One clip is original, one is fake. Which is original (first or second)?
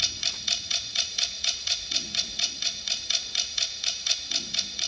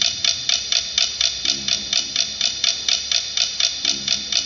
second